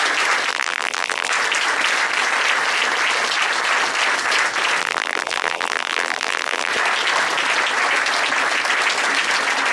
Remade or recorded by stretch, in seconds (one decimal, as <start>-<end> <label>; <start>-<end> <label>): 0.0-0.5 recorded; 0.5-1.3 remade; 1.3-4.8 recorded; 4.8-6.7 remade; 6.7-9.7 recorded